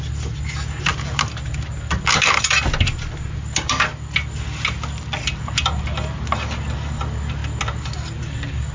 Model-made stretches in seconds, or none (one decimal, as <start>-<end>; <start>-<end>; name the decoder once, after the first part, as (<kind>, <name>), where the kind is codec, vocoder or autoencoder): none

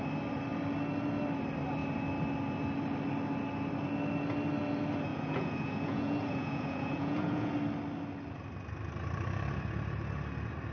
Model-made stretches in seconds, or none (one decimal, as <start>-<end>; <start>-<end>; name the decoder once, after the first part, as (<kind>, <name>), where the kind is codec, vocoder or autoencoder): 5.1-7.5 (vocoder, Vocos)

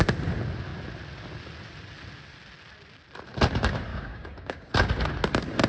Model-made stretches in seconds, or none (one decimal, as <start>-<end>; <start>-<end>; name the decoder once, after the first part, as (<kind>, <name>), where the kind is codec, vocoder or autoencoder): 3.9-4.7 (codec, DAC)